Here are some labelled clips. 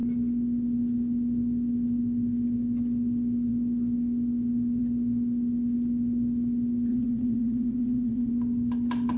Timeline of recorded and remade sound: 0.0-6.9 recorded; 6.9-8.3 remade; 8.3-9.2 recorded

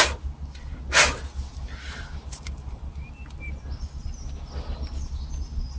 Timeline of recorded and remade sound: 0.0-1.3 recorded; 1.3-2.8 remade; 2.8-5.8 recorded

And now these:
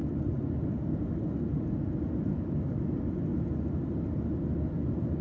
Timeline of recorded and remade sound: 0.0-5.2 recorded